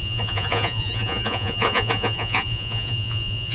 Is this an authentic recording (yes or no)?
no